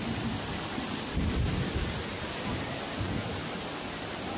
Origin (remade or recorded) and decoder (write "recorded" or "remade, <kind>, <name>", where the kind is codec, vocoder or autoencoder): recorded